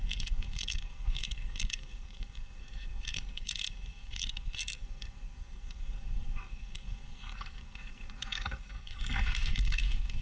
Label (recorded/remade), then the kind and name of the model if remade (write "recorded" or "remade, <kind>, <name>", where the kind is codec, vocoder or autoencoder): remade, codec, SNAC